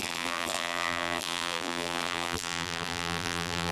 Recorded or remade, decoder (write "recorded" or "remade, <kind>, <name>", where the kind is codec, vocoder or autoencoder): remade, vocoder, BigVGAN v2